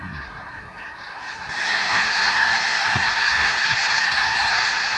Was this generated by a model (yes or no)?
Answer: yes